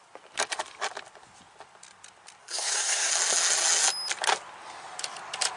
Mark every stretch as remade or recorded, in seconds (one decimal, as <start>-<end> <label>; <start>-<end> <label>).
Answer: 0.0-2.4 recorded; 2.4-3.1 remade; 3.1-5.6 recorded